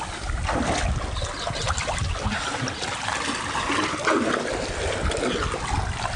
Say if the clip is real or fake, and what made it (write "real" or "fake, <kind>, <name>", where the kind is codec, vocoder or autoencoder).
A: real